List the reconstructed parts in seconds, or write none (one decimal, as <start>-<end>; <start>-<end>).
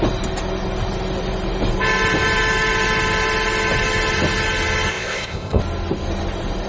4.9-5.6